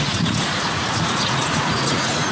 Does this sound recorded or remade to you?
remade